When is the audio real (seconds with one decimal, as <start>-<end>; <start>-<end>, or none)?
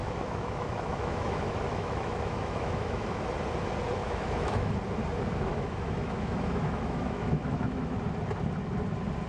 3.3-4.0; 4.7-5.5; 7.9-9.3